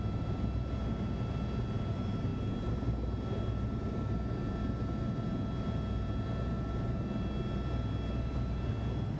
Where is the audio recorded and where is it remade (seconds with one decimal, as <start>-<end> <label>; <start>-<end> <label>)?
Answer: 0.0-9.2 recorded